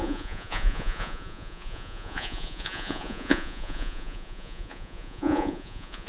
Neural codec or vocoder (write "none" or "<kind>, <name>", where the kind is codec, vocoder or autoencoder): vocoder, Vocos